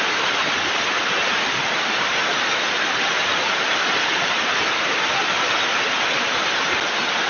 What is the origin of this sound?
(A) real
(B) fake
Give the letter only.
A